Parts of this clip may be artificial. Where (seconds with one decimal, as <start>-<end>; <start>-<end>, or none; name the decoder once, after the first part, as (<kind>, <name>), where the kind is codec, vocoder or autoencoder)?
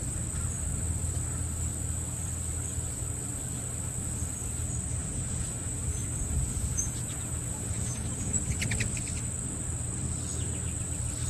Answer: 5.0-8.6 (vocoder, Vocos)